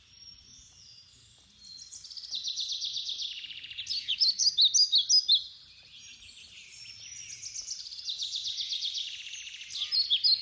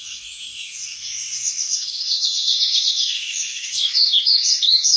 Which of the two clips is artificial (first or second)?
second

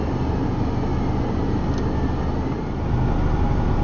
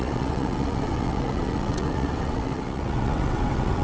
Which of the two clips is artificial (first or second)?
second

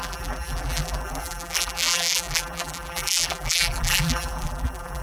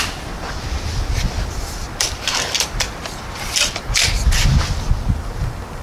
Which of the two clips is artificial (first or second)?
first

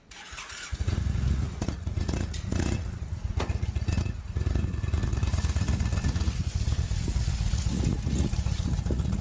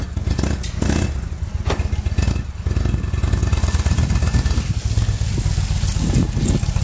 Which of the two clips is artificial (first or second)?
first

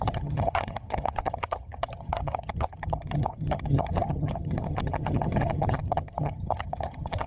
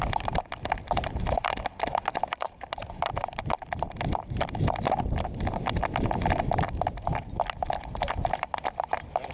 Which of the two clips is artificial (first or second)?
first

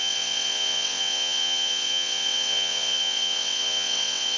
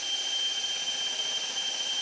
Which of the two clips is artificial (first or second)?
first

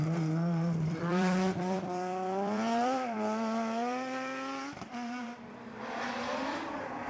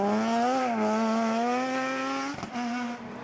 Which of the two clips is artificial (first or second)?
first